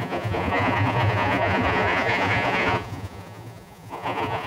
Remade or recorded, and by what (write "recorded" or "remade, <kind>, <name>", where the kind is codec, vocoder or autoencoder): remade, vocoder, Vocos